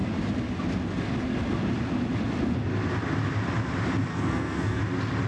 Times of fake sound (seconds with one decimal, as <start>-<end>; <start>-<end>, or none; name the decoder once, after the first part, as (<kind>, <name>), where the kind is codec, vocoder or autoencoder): 4.1-4.8 (codec, SNAC)